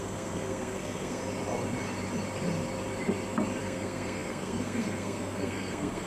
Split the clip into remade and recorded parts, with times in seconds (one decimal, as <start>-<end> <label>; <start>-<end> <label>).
0.0-1.2 remade; 1.2-3.6 recorded; 3.6-6.1 remade